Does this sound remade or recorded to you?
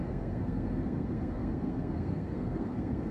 remade